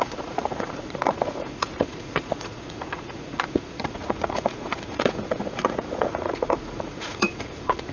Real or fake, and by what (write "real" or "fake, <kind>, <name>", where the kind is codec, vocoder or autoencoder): fake, vocoder, Vocos